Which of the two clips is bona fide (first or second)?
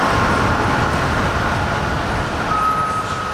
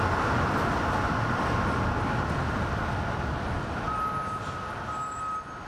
second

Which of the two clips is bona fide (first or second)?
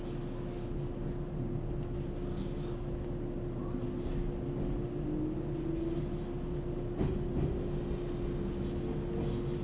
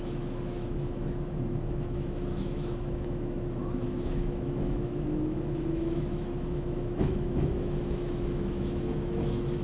first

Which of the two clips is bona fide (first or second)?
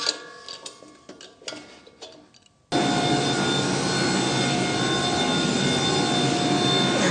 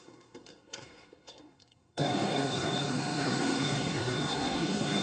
first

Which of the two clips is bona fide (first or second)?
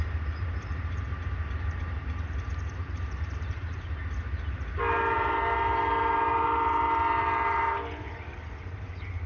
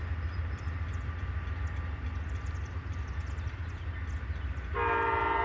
second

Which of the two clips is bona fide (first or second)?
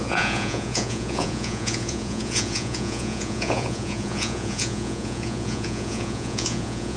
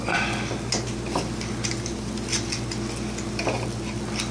second